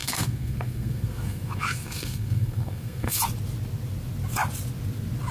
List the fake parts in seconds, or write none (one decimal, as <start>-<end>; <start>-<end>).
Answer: 0.0-3.2